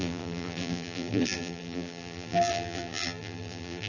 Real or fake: fake